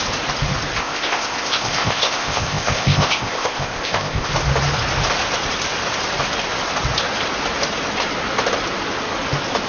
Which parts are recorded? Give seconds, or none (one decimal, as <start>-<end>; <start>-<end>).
0.0-0.8; 4.3-9.7